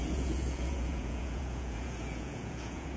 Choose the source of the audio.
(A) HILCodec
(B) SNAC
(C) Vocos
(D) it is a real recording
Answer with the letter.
C